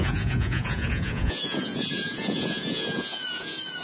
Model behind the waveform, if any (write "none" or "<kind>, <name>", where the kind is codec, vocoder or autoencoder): vocoder, Vocos